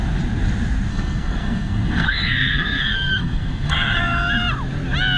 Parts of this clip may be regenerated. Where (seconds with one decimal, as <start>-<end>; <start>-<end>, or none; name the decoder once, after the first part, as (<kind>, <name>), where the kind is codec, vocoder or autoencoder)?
0.9-4.0 (codec, SNAC)